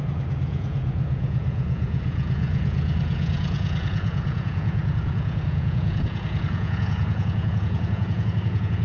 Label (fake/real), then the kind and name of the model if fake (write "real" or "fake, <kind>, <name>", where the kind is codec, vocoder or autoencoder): fake, vocoder, Vocos